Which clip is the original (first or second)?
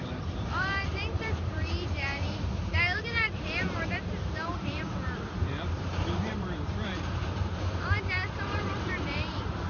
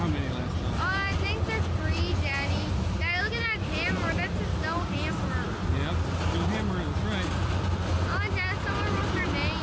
second